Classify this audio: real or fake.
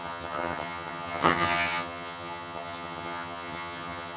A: fake